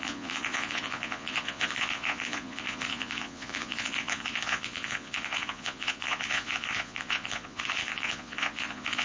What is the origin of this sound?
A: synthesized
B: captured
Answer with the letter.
A